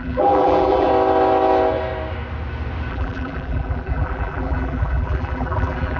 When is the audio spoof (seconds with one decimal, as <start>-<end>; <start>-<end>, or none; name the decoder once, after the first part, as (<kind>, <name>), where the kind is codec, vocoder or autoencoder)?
0.0-0.9 (vocoder, BigVGAN v2); 2.9-6.0